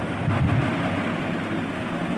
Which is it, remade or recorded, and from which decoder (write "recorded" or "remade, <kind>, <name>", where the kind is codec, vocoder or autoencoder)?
recorded